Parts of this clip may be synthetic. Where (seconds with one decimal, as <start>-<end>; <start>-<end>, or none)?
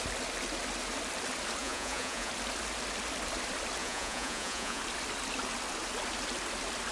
1.6-2.3; 3.8-4.8